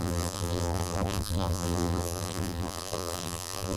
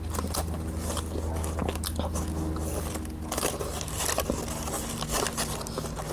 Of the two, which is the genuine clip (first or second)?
second